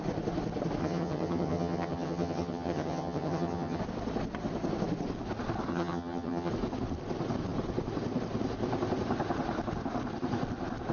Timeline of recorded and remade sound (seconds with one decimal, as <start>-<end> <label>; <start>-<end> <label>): 0.0-0.8 recorded; 0.8-3.8 remade; 3.8-5.7 recorded; 5.7-6.5 remade; 6.5-10.9 recorded

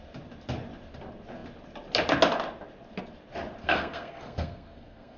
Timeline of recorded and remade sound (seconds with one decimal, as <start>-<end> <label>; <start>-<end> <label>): 0.0-3.6 recorded; 3.6-5.2 remade

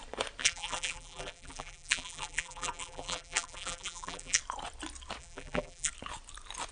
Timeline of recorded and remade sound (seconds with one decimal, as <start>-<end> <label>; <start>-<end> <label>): 0.0-0.4 recorded; 0.4-4.4 remade; 4.4-5.2 recorded; 5.2-5.9 remade; 5.9-6.7 recorded

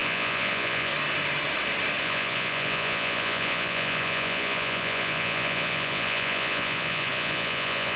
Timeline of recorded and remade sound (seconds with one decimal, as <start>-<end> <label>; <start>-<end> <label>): 0.0-0.9 remade; 0.9-2.0 recorded; 2.0-8.0 remade

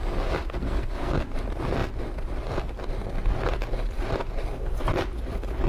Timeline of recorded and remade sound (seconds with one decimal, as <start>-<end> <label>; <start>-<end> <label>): 0.0-0.6 recorded; 0.6-1.1 remade; 1.1-5.7 recorded

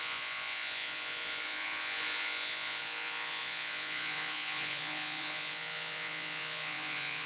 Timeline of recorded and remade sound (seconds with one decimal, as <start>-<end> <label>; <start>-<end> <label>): 0.0-7.3 remade